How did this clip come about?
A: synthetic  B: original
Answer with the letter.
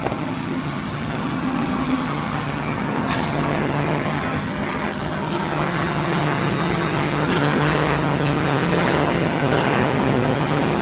A